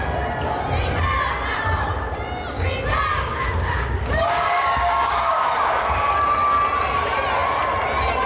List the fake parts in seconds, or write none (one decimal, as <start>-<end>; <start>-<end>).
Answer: 3.1-6.1